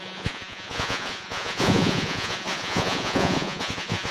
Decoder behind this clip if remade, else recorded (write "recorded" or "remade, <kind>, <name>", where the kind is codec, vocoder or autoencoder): remade, vocoder, Vocos